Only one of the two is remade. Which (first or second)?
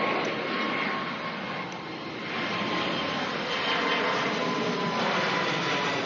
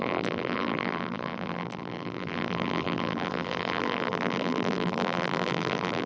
second